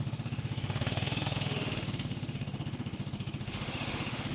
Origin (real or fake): fake